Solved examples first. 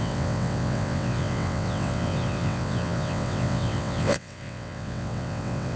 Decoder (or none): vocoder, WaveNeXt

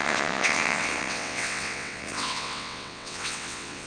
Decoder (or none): vocoder, WaveNeXt